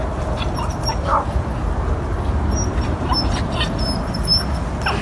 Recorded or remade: recorded